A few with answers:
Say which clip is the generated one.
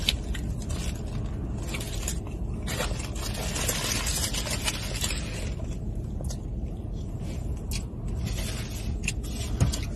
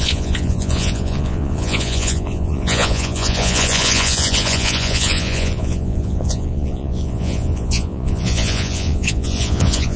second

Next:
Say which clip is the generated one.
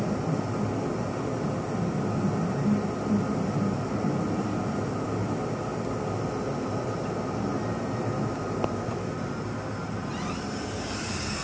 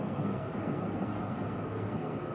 second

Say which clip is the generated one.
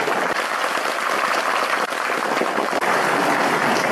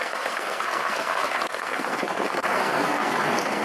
second